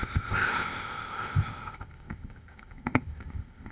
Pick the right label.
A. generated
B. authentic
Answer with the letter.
A